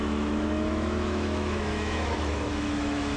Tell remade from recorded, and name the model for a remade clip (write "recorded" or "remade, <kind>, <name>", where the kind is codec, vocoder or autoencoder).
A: remade, autoencoder, DAC-VAE